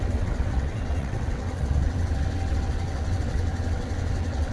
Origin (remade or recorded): remade